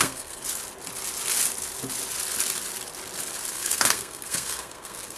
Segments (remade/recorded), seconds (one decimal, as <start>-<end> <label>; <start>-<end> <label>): 0.0-0.4 remade; 0.4-3.5 recorded; 3.5-5.2 remade